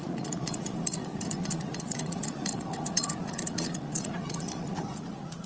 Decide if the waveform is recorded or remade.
remade